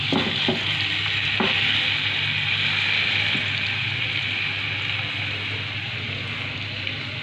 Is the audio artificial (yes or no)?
no